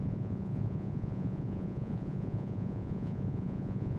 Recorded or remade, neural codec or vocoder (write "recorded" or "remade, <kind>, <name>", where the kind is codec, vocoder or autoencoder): remade, vocoder, Vocos